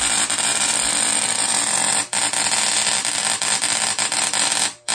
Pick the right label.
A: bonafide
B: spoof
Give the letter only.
B